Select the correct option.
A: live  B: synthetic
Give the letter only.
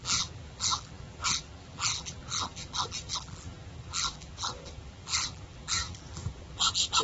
B